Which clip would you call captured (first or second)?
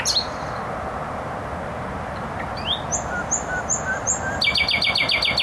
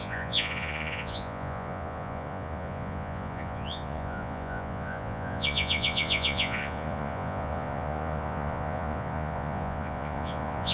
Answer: first